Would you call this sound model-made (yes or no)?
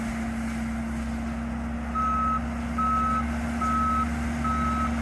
no